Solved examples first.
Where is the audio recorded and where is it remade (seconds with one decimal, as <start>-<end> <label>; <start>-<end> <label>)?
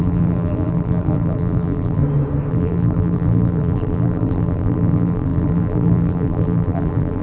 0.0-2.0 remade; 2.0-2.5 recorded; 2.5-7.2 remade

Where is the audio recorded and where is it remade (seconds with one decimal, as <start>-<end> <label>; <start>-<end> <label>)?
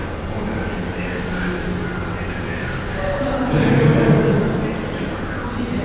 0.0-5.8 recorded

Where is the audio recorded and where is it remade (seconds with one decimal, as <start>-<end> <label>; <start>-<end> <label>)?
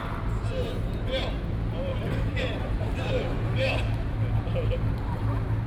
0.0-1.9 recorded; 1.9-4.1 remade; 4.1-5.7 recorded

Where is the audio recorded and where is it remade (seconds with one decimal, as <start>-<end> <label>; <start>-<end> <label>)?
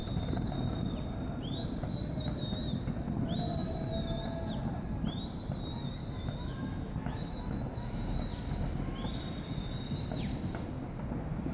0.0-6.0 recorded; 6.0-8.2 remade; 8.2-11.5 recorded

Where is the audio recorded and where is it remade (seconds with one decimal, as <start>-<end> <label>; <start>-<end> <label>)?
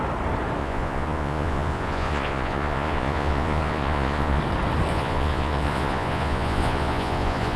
0.0-0.6 recorded; 0.6-4.4 remade; 4.4-4.9 recorded; 4.9-7.6 remade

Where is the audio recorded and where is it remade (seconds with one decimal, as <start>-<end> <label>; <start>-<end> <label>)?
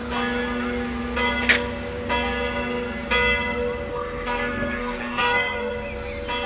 0.0-3.9 recorded; 3.9-5.7 remade; 5.7-6.5 recorded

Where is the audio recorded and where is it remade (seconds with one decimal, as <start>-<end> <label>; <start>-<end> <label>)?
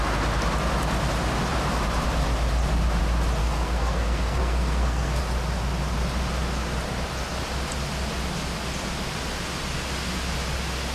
0.0-3.4 recorded; 3.4-5.2 remade; 5.2-10.9 recorded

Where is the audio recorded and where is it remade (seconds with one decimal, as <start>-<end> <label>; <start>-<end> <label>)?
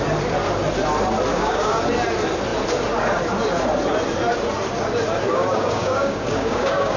0.0-1.3 recorded; 1.3-1.8 remade; 1.8-5.3 recorded; 5.3-7.0 remade